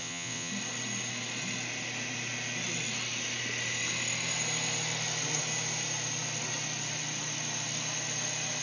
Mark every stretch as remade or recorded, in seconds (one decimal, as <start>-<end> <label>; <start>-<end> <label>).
0.0-0.5 remade; 0.5-8.6 recorded